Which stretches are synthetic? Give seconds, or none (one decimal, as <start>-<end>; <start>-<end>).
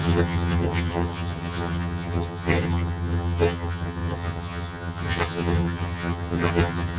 0.0-7.0